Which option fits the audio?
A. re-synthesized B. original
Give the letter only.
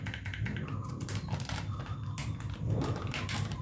A